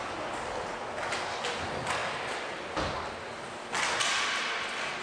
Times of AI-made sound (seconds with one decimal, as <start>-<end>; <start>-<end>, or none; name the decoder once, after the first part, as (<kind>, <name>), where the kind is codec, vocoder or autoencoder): none